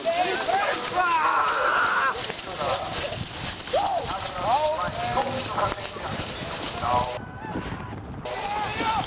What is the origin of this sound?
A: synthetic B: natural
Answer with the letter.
B